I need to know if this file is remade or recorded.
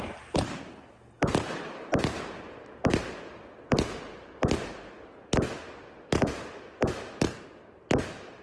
recorded